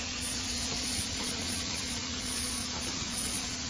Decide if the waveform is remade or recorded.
remade